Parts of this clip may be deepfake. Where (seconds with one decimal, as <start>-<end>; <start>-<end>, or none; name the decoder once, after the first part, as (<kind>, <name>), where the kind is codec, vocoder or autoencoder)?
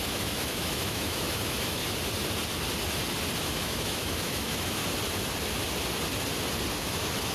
0.0-1.8 (autoencoder, DAC-VAE); 3.4-4.8; 6.8-7.3